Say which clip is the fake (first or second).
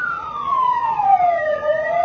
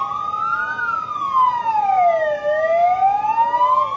first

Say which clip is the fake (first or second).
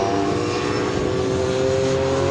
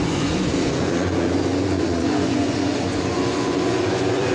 second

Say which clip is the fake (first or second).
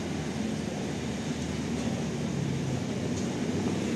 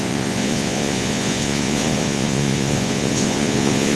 second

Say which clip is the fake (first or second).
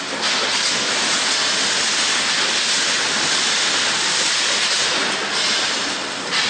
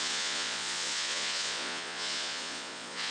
second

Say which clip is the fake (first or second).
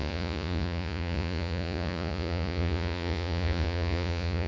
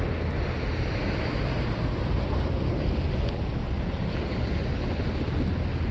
first